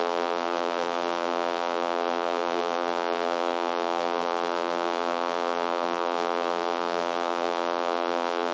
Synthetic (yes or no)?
yes